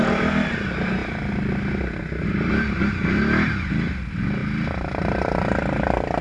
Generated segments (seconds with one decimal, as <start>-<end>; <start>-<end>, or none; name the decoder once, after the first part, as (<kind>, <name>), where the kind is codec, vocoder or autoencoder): none